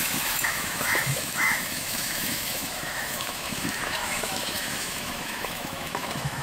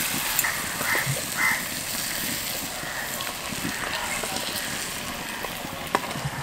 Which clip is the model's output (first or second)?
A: first